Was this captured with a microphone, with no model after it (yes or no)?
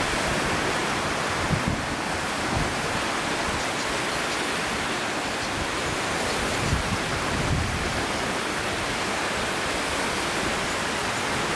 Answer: yes